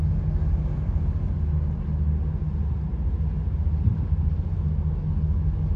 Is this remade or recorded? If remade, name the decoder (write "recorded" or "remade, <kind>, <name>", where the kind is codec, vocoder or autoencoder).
recorded